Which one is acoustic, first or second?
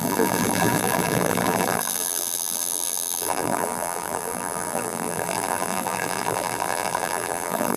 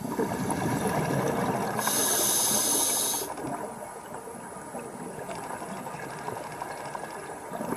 second